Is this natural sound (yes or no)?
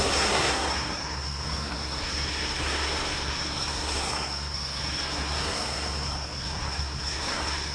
no